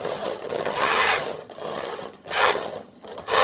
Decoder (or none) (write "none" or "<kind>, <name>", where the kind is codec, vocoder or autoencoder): vocoder, HiFi-GAN